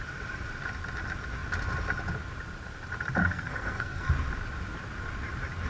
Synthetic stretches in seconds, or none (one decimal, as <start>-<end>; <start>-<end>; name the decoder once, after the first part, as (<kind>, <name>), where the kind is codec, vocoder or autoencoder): 3.2-4.1 (codec, SNAC)

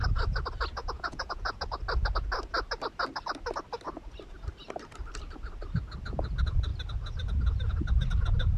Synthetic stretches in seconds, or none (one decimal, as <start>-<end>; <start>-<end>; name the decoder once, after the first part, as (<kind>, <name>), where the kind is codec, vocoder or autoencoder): 0.8-1.5 (vocoder, Vocos)